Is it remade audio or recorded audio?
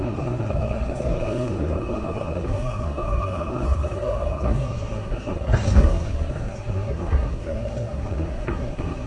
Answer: remade